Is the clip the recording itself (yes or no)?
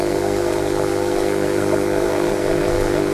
no